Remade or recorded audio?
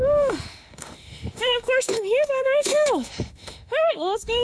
remade